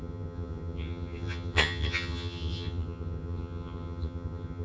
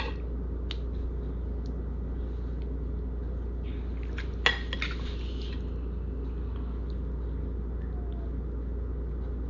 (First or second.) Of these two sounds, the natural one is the second